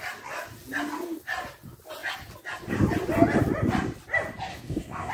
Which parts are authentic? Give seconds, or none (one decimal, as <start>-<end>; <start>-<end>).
0.0-4.5